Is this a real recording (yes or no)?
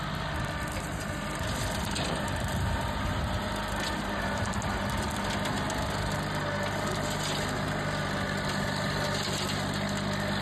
yes